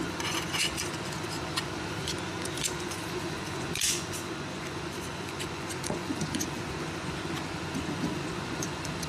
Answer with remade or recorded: remade